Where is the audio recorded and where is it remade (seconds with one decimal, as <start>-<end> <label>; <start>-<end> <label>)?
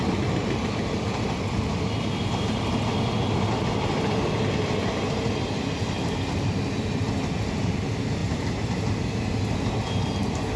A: 0.0-10.6 recorded